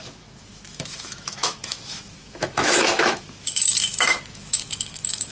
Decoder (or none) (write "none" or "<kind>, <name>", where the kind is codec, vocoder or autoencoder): autoencoder, DAC-VAE